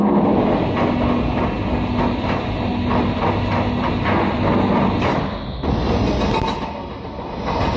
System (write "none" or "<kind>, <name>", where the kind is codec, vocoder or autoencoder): none